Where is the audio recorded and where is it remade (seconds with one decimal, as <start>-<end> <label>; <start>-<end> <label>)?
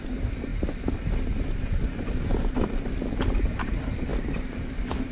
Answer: 0.0-5.1 recorded